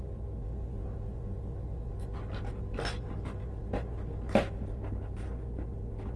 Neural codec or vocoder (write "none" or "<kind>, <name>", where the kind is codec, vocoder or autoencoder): none